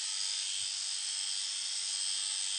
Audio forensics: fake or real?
real